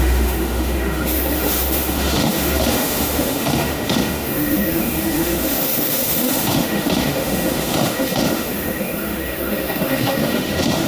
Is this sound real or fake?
fake